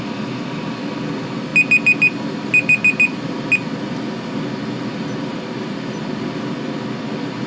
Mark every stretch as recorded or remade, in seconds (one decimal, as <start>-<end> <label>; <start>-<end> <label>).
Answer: 0.0-7.5 recorded